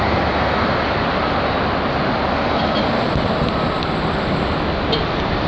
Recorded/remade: recorded